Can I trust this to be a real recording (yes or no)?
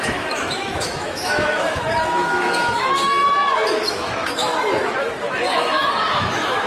no